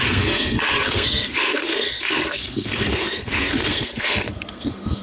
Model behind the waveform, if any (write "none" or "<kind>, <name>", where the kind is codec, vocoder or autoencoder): codec, SNAC